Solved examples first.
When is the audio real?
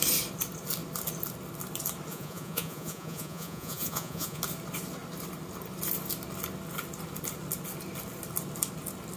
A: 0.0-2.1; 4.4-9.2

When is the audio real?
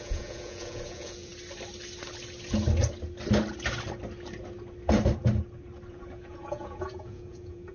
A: 1.3-5.9